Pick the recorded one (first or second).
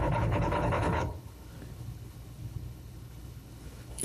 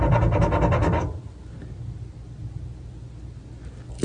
second